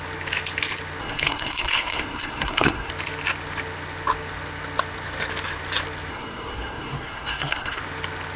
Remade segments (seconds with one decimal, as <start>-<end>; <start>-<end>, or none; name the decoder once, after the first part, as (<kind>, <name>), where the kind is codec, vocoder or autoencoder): 1.0-2.9 (codec, SNAC); 6.1-7.8